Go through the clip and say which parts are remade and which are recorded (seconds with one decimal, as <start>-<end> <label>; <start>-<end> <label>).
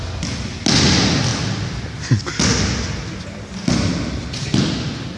0.0-5.2 recorded